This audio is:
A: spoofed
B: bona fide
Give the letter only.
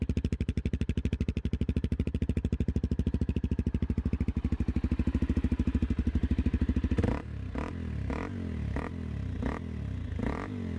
B